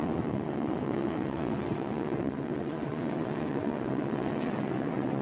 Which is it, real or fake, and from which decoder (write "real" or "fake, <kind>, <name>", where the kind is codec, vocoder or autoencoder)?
fake, vocoder, WaveNeXt